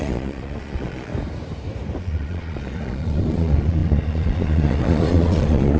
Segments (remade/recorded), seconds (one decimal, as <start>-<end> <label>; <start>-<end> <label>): 0.0-1.1 remade; 1.1-2.0 recorded; 2.0-5.8 remade